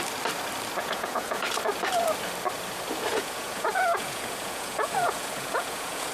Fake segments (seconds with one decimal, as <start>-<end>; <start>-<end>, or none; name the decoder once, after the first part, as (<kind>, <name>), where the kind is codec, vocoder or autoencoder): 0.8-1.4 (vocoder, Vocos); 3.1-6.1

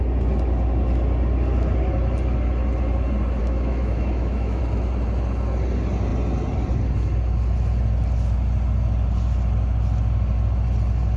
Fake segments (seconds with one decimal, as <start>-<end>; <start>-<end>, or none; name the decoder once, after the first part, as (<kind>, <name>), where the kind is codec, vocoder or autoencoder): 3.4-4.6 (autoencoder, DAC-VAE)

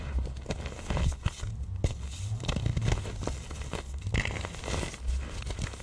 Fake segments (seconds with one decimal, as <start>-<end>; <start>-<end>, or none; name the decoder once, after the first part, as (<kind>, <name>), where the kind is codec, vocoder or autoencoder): none

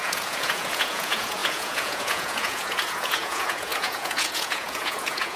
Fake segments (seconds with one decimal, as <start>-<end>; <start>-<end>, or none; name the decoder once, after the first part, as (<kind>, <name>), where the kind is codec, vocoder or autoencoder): 0.0-5.4 (vocoder, Vocos)

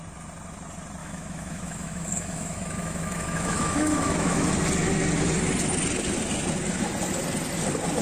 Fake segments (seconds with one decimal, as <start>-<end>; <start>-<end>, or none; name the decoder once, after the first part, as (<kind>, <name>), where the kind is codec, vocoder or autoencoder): 1.0-4.5 (autoencoder, DAC-VAE)